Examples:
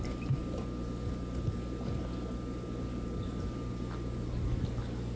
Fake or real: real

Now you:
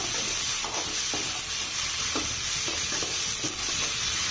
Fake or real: real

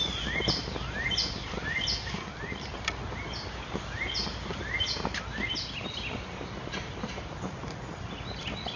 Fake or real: real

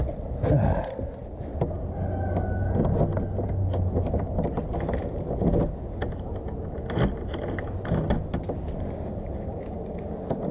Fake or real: real